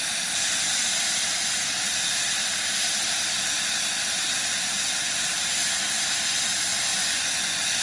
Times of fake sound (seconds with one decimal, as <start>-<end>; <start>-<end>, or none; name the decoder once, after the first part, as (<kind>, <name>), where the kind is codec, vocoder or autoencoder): 6.9-7.8 (vocoder, Vocos)